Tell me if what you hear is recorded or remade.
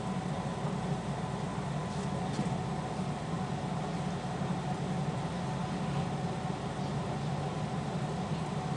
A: recorded